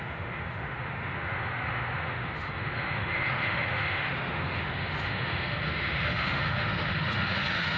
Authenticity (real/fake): fake